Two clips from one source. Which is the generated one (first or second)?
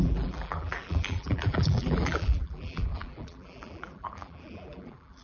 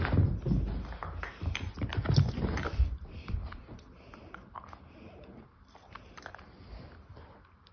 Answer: first